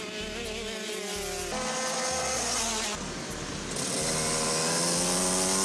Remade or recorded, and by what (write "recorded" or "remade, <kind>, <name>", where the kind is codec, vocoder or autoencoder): recorded